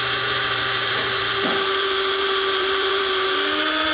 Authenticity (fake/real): fake